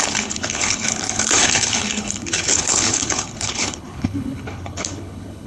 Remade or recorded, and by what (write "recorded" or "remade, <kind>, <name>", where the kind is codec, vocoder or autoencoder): remade, codec, HILCodec